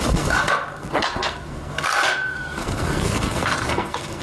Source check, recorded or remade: remade